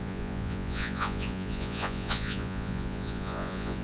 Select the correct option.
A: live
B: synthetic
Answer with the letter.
B